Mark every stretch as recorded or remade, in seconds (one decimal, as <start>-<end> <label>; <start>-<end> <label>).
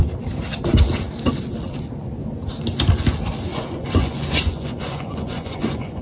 0.0-3.5 recorded; 3.5-6.0 remade